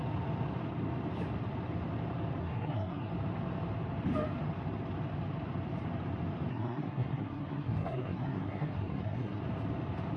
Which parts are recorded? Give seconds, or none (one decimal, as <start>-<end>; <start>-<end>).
0.0-2.4; 3.1-6.5; 9.4-10.2